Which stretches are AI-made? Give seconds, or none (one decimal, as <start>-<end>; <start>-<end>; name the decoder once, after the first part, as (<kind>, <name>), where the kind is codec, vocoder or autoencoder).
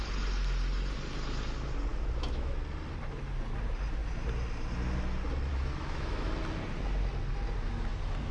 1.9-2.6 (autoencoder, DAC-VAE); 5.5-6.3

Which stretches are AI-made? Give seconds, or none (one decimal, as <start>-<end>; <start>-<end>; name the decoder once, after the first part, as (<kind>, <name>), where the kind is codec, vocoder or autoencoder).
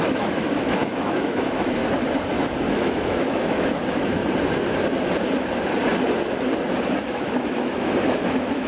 0.0-1.8 (autoencoder, DAC-VAE); 2.7-4.2; 7.0-8.7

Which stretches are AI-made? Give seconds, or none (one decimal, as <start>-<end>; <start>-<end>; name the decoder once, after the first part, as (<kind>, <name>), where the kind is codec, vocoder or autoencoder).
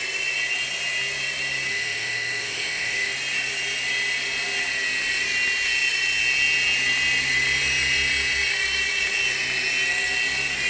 1.7-3.1 (autoencoder, DAC-VAE)